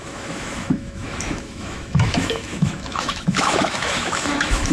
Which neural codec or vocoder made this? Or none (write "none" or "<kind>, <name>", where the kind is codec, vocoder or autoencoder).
autoencoder, DAC-VAE